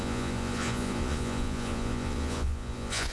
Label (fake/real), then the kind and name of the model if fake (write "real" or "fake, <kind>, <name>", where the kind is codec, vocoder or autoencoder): fake, vocoder, Vocos